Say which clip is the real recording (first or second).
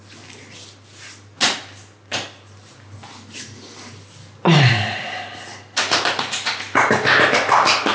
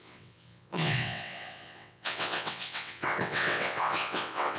first